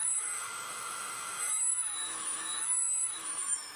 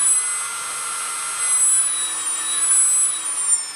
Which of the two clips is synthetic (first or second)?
first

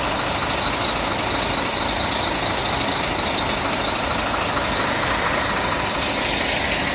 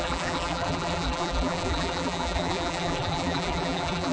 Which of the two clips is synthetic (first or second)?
second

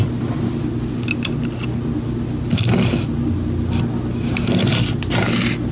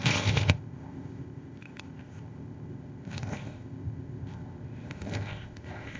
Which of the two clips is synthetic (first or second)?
second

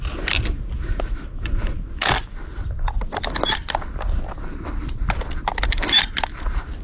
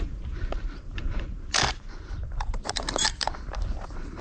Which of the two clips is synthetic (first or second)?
second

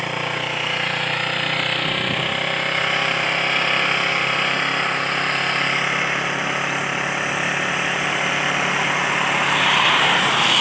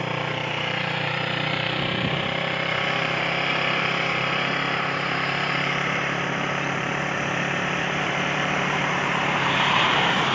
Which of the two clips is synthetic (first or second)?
second